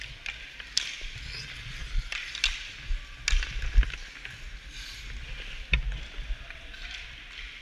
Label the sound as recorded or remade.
recorded